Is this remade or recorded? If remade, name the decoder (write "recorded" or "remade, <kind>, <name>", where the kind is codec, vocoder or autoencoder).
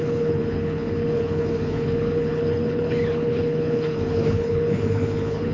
remade, codec, HILCodec